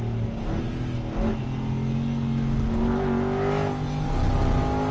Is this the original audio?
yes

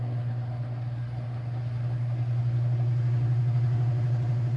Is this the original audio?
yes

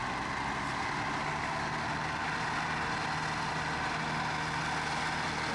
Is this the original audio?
yes